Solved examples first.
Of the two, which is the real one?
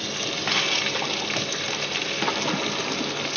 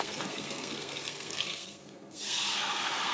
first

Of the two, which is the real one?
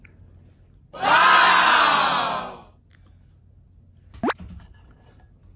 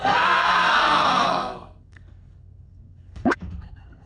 first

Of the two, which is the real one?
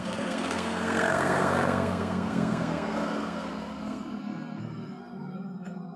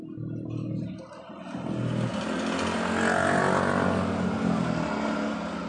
second